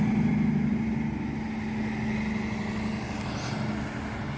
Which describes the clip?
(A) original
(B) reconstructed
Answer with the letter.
A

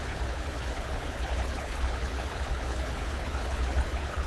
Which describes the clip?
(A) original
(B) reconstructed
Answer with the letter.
B